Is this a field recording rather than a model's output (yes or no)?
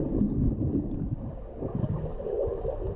yes